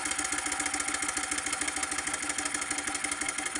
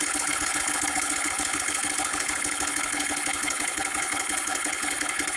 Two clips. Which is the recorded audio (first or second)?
first